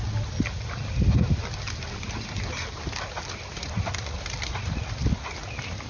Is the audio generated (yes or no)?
no